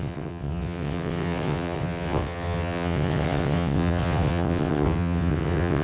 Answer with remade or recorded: remade